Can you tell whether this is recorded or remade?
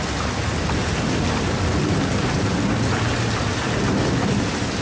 recorded